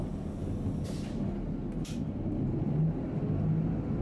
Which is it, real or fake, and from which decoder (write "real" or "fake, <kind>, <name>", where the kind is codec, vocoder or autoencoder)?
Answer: real